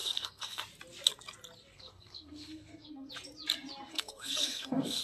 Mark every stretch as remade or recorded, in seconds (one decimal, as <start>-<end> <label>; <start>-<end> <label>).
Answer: 0.0-0.6 remade; 0.6-1.7 recorded; 1.7-3.1 remade; 3.1-3.9 recorded; 3.9-5.0 remade